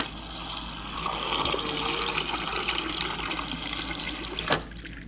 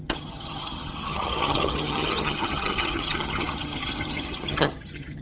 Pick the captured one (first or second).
first